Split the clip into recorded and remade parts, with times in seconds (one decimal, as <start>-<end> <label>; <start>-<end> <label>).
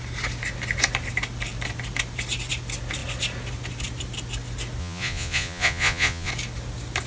0.0-4.8 recorded; 4.8-6.3 remade; 6.3-7.1 recorded